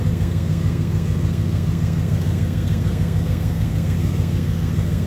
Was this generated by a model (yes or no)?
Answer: yes